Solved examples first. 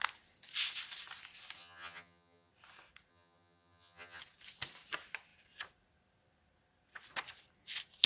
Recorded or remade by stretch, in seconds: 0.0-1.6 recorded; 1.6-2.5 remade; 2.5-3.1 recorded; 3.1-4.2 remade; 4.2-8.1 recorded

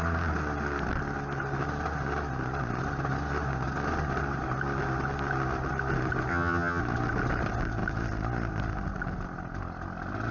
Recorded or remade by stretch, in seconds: 0.0-6.3 recorded; 6.3-6.8 remade; 6.8-10.3 recorded

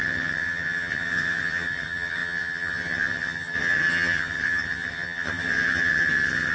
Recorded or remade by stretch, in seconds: 0.0-6.5 remade

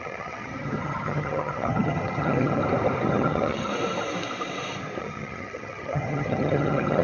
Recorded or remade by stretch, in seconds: 0.0-2.6 remade; 2.6-3.1 recorded; 3.1-3.7 remade; 3.7-5.0 recorded; 5.0-7.0 remade

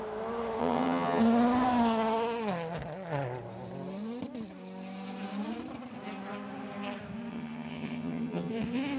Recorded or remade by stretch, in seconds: 0.0-0.6 recorded; 0.6-1.2 remade; 1.2-7.3 recorded; 7.3-8.5 remade; 8.5-9.0 recorded

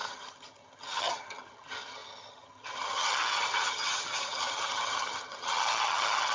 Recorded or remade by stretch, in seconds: 0.0-6.3 remade

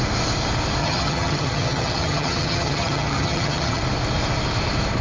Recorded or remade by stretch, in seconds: 0.0-0.8 recorded; 0.8-3.8 remade; 3.8-5.0 recorded

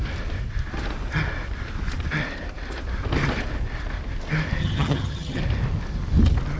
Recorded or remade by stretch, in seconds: 0.0-4.6 recorded; 4.6-5.4 remade; 5.4-6.6 recorded